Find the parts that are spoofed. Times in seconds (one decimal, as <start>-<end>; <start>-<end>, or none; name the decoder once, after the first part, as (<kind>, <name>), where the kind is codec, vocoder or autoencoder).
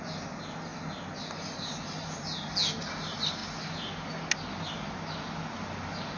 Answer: none